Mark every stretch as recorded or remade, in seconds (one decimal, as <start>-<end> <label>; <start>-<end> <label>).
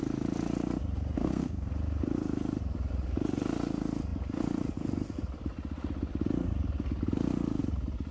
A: 0.0-1.2 recorded; 1.2-1.7 remade; 1.7-8.1 recorded